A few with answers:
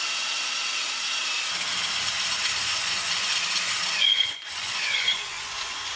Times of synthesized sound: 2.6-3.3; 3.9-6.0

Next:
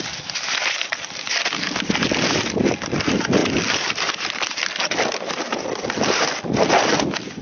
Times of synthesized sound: none

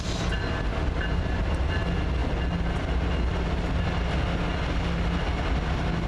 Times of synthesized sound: none

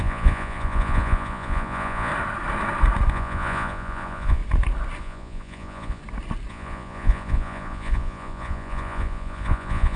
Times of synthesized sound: 0.0-2.1; 3.1-4.4; 5.0-6.0; 6.5-10.0